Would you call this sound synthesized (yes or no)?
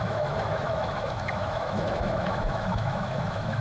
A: yes